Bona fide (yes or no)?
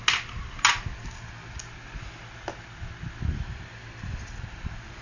yes